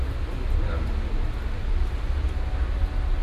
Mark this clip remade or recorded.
recorded